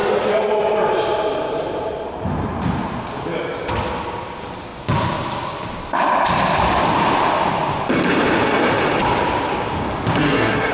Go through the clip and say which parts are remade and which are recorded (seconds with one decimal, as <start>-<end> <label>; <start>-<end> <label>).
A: 0.0-10.2 recorded; 10.2-10.7 remade